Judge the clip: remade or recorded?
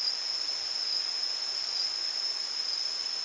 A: recorded